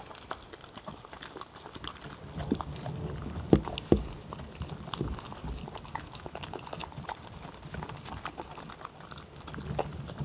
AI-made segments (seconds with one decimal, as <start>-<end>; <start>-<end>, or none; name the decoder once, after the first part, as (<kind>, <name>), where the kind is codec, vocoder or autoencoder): 5.9-6.5 (autoencoder, DAC-VAE)

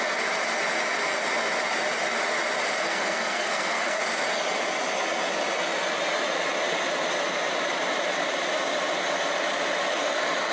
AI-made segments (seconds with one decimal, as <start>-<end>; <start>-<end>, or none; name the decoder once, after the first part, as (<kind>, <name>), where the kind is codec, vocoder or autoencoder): 2.8-4.0 (codec, SNAC)

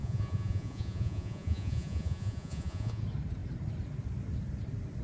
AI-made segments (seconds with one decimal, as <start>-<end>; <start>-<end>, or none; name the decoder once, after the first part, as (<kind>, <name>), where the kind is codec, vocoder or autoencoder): 0.0-3.0 (vocoder, Vocos)

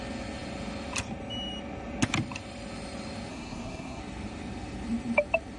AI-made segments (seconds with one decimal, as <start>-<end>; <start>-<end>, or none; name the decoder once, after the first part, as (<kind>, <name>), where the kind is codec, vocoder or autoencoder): 3.3-4.0 (codec, SNAC)